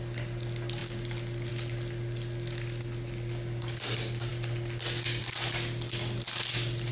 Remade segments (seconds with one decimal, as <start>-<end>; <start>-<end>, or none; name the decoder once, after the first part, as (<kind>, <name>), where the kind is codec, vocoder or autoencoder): none